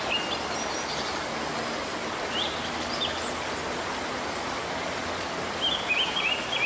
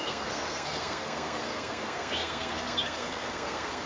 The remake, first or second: second